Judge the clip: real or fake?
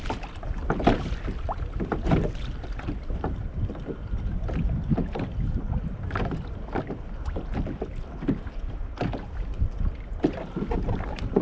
real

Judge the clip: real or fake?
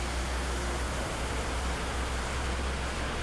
real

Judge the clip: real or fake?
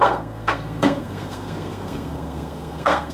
fake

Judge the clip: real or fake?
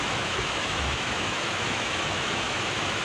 fake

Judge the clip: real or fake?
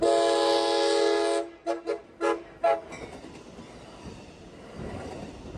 real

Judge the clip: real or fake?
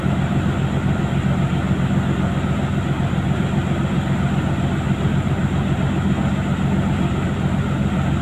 real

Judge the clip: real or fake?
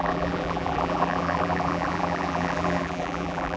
fake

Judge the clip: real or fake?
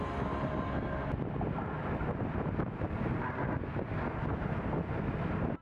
real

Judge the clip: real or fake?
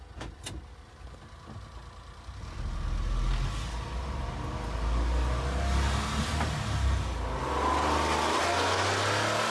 real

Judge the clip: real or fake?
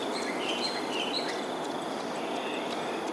real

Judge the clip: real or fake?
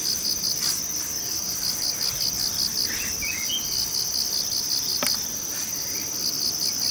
real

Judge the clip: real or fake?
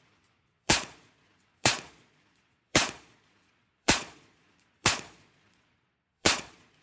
fake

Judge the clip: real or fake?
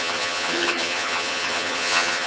fake